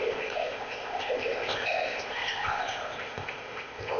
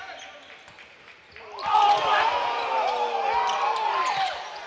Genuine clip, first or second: second